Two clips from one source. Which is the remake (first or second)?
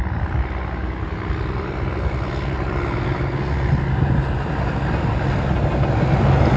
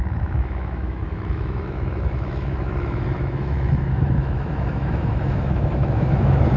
second